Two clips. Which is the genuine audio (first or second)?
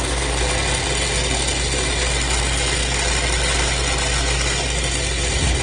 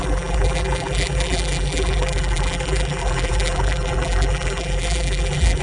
first